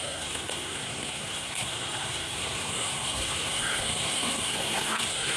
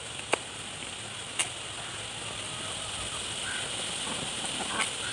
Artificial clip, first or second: first